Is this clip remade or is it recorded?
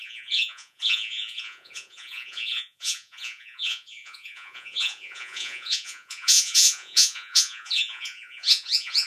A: remade